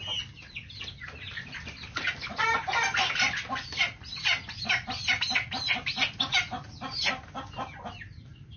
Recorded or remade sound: recorded